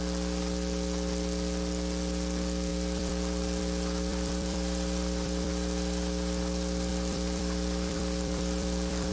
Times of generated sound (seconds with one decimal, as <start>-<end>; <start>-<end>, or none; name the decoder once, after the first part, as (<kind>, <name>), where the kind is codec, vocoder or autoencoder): 2.7-3.6 (vocoder, BigVGAN v2); 4.1-5.5; 6.9-9.1